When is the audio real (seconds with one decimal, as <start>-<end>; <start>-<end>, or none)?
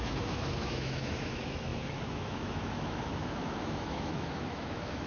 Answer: none